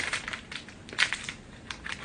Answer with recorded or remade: recorded